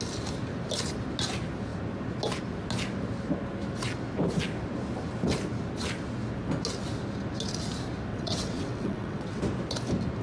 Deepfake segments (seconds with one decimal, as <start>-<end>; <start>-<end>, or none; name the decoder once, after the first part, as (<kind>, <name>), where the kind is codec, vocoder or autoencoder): 8.1-9.4 (vocoder, WaveNeXt)